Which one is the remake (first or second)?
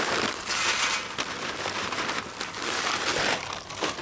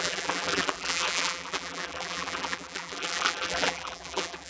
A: second